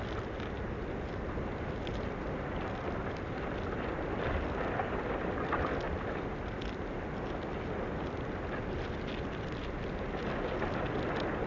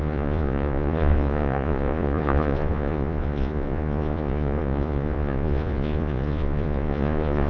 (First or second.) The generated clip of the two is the second